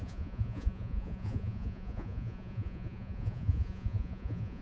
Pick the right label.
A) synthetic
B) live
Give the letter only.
A